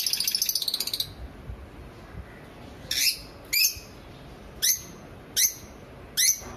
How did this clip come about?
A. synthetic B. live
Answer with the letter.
B